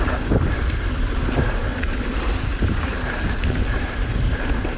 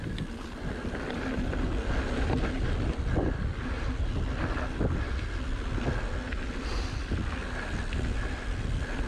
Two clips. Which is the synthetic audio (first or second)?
first